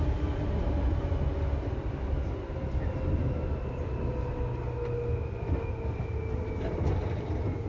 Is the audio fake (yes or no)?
no